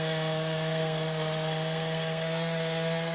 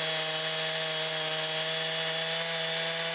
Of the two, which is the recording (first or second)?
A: second